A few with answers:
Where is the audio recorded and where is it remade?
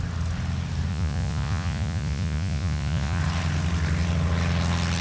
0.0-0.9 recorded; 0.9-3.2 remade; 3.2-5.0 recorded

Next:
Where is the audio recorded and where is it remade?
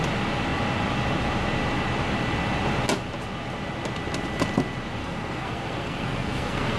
0.0-5.0 recorded; 5.0-6.8 remade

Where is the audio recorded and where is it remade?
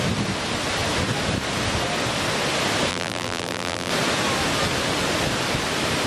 0.0-2.9 recorded; 2.9-3.9 remade; 3.9-6.1 recorded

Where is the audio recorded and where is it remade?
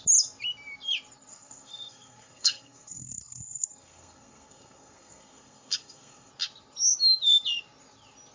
0.0-1.3 recorded; 1.3-6.3 remade; 6.3-8.3 recorded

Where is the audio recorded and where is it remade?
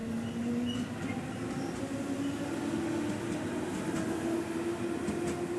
0.0-5.6 recorded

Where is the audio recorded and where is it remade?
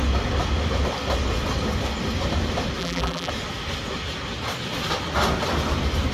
0.0-2.8 recorded; 2.8-3.3 remade; 3.3-6.1 recorded